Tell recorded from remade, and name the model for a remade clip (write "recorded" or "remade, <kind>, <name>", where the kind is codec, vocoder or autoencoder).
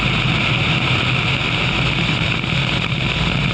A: recorded